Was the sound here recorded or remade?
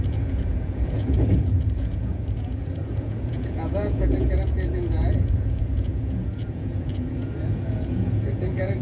remade